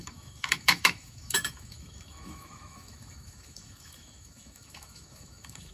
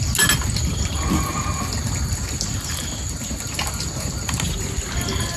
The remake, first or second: first